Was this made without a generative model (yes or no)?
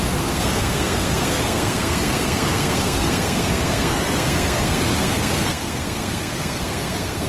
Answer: no